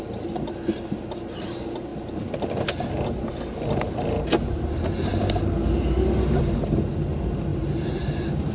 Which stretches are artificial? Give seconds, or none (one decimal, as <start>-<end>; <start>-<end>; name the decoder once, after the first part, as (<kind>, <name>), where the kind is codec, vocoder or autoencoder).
7.5-8.5 (vocoder, BigVGAN v2)